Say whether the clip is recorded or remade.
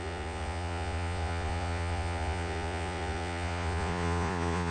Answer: remade